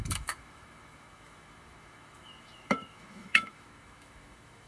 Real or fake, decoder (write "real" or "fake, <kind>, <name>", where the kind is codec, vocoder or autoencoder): fake, autoencoder, DAC-VAE